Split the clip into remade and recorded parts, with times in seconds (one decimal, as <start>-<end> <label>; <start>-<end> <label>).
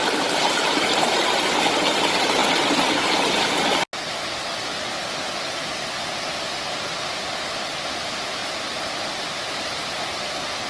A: 0.0-10.7 recorded